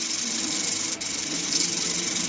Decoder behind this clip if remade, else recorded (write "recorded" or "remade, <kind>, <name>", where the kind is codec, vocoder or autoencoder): remade, vocoder, BigVGAN v2